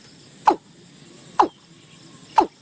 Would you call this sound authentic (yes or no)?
yes